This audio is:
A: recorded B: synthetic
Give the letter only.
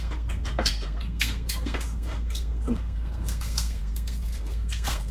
B